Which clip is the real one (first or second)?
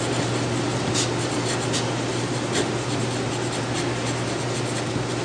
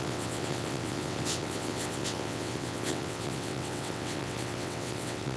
first